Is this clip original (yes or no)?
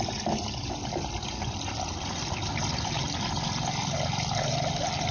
no